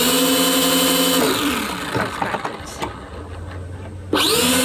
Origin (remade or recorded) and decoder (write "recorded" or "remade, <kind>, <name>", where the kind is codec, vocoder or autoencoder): recorded